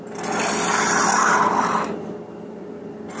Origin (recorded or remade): recorded